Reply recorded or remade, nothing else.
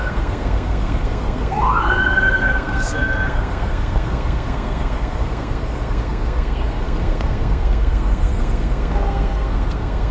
remade